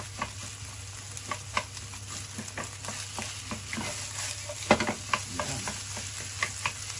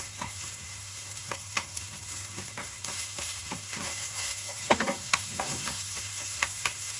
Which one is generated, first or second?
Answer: second